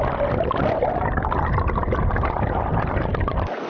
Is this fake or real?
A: real